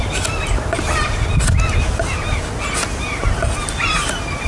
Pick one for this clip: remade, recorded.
recorded